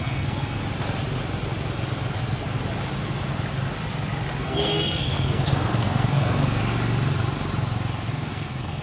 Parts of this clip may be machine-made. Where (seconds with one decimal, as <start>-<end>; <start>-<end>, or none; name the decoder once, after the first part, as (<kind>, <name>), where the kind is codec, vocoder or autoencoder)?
0.0-0.6 (codec, SNAC); 4.4-6.6; 8.1-8.8